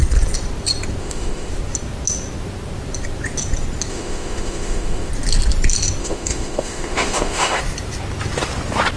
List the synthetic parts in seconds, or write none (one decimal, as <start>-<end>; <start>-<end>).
1.0-1.5; 3.9-5.1; 6.0-7.6